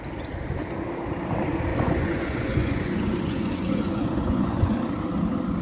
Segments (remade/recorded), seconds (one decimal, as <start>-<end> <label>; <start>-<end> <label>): 0.0-1.7 recorded; 1.7-4.8 remade; 4.8-5.6 recorded